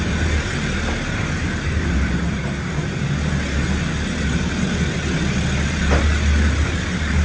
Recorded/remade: recorded